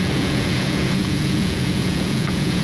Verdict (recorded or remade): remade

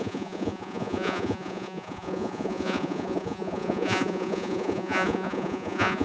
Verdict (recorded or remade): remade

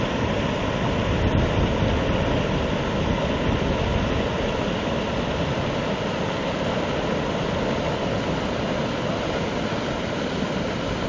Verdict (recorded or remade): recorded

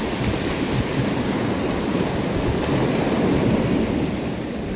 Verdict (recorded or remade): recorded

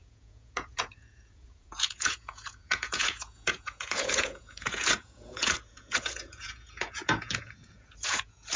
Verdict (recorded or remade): remade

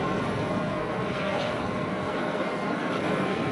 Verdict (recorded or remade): remade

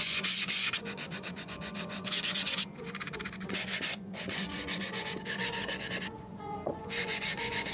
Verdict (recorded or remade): remade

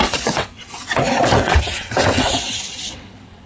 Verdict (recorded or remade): remade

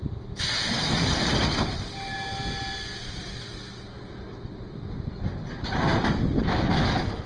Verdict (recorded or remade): recorded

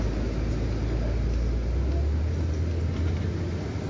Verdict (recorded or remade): recorded